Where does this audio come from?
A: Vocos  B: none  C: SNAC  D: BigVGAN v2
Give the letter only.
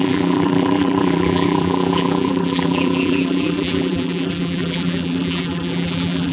D